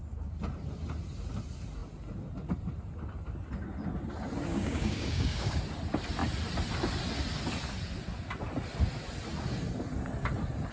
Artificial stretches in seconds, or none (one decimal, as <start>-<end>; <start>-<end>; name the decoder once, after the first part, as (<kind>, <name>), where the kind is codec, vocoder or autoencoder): 4.5-5.6 (codec, DAC)